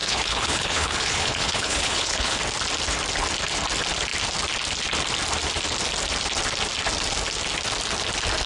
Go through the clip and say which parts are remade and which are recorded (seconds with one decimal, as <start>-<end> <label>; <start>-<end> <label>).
0.0-2.4 remade; 2.4-8.5 recorded